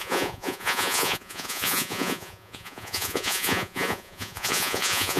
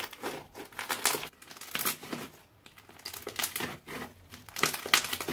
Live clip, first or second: second